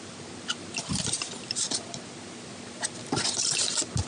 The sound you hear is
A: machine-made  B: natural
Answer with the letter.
B